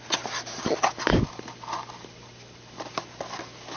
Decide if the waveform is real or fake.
real